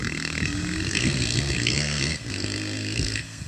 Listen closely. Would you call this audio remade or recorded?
remade